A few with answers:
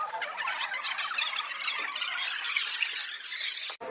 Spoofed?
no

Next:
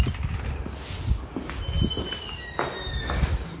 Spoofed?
no